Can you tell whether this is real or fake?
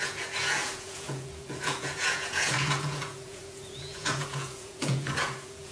fake